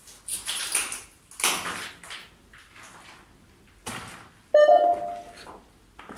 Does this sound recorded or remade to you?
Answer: recorded